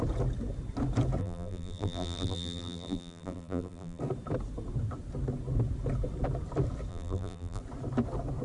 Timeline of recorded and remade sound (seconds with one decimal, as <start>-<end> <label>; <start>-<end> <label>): 0.0-1.2 recorded; 1.2-4.0 remade; 4.0-6.9 recorded; 6.9-7.6 remade; 7.6-8.4 recorded